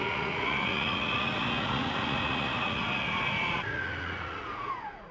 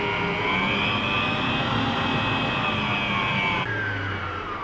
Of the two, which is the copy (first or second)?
first